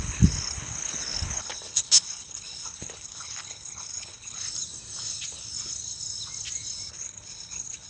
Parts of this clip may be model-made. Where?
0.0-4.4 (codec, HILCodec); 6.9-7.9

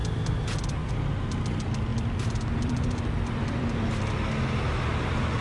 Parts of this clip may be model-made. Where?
0.0-0.9 (vocoder, BigVGAN v2); 1.9-4.1

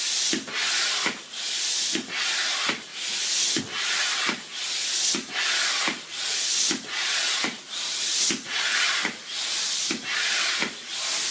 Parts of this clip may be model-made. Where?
none